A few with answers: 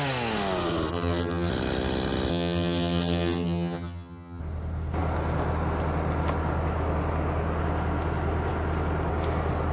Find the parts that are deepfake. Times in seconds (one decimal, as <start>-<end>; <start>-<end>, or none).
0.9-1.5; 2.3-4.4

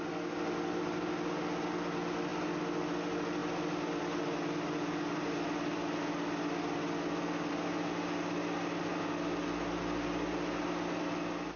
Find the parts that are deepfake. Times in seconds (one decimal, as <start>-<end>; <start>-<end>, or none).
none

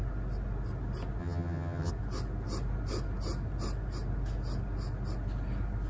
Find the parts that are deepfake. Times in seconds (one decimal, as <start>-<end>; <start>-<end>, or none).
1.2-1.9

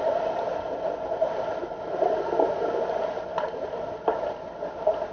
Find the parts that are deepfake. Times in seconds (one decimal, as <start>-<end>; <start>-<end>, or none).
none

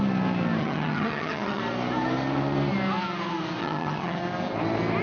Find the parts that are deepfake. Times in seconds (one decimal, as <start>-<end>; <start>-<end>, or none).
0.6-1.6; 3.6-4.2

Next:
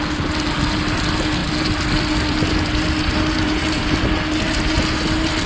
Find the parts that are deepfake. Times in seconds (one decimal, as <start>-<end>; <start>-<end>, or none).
none